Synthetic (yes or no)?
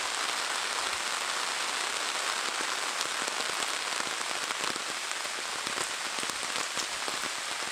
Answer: no